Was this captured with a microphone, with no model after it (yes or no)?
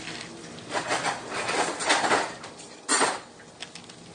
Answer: yes